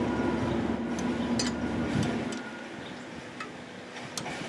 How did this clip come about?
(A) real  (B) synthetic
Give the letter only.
A